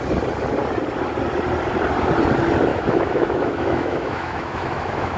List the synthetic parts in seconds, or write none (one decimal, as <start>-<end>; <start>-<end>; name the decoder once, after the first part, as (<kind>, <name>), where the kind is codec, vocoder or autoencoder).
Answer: 2.7-5.2 (autoencoder, DAC-VAE)